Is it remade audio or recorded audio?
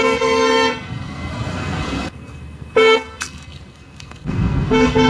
remade